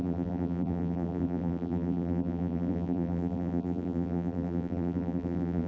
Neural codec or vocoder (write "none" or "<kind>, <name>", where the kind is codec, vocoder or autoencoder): vocoder, BigVGAN v2